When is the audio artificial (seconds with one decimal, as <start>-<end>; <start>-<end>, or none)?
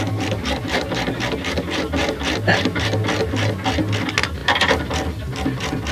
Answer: none